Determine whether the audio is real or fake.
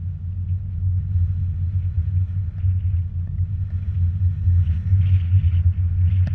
real